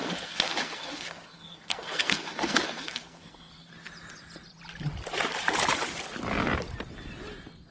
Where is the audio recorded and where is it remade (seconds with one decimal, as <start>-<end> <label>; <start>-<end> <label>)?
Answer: 0.0-3.7 remade; 3.7-7.7 recorded